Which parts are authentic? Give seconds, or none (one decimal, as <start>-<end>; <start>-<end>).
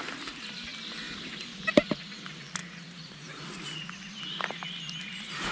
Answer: 0.0-2.6; 3.4-5.5